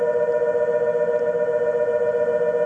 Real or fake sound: real